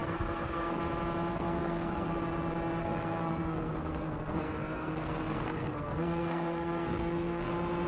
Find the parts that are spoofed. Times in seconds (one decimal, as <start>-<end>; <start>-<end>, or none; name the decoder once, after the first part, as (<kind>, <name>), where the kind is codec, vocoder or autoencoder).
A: 0.0-0.8 (codec, SNAC); 1.3-2.1; 2.8-7.5